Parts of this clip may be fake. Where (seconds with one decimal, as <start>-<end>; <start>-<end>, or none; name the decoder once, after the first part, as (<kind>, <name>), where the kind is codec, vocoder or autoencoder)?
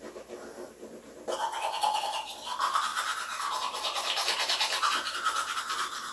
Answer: 2.9-5.6 (vocoder, BigVGAN v2)